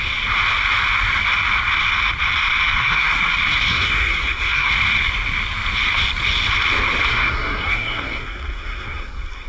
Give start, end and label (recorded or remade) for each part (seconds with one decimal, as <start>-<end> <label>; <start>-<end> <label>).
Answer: 0.0-2.8 recorded; 2.8-3.3 remade; 3.3-3.7 recorded; 3.7-4.7 remade; 4.7-7.1 recorded; 7.1-9.5 remade